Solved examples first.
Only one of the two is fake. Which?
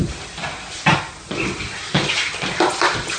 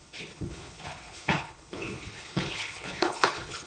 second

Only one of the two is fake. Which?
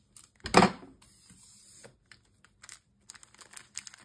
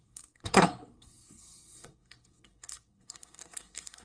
second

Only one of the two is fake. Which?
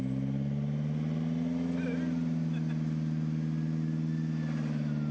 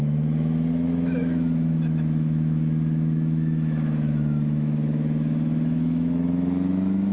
second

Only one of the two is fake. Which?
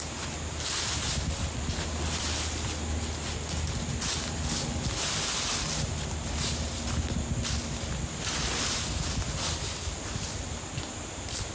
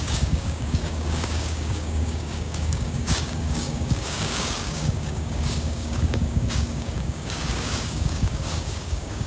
second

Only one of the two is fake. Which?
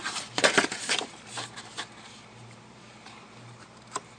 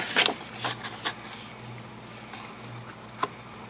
first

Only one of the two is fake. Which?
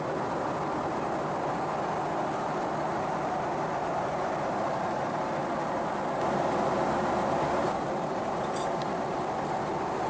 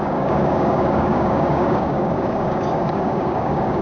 second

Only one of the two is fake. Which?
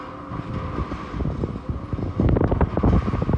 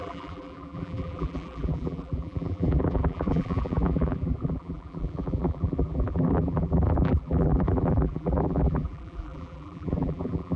second